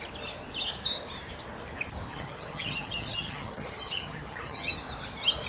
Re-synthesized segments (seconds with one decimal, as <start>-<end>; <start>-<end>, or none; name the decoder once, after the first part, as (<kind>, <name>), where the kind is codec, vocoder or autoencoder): 2.1-4.7 (vocoder, HiFi-GAN)